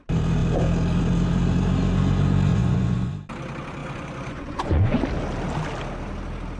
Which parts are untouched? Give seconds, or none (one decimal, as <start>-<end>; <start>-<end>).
0.0-2.5; 3.1-3.8; 5.0-6.6